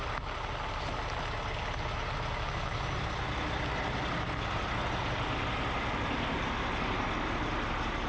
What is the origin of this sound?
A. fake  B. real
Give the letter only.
B